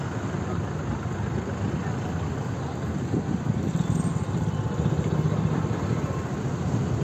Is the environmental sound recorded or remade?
recorded